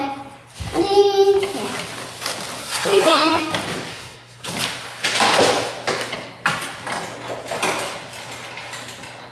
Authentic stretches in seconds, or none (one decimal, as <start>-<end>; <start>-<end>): 0.0-2.6; 3.4-3.9; 4.5-9.3